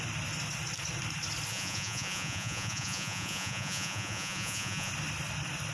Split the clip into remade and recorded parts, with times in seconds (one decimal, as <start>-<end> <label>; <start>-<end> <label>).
0.0-1.5 recorded; 1.5-4.9 remade; 4.9-5.7 recorded